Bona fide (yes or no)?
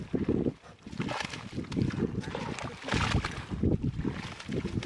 yes